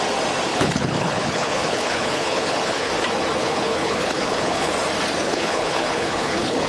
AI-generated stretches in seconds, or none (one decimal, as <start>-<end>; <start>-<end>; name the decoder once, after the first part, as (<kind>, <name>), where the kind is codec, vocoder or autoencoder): 0.5-2.9 (codec, HILCodec); 3.4-4.7; 5.2-6.7